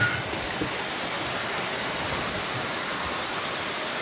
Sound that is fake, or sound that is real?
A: real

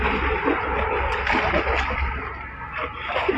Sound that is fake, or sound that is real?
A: real